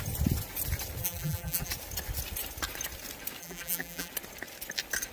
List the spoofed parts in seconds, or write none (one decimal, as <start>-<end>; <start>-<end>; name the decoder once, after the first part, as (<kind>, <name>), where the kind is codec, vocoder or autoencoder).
1.0-1.7 (vocoder, BigVGAN v2); 3.4-4.1